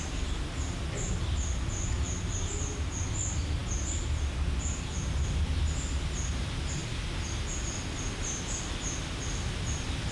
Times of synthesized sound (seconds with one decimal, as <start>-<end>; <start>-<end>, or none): none